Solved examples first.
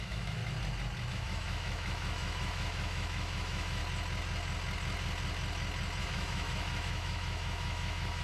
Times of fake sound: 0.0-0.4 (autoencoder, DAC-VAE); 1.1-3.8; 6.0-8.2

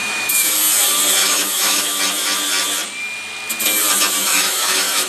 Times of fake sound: 0.0-0.5 (autoencoder, DAC-VAE); 1.2-2.0; 4.2-5.1

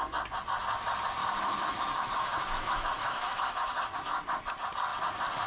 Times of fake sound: 1.2-4.5 (autoencoder, DAC-VAE)

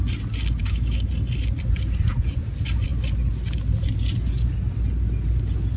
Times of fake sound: 0.6-1.1 (autoencoder, DAC-VAE)

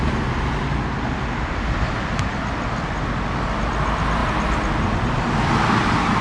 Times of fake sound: none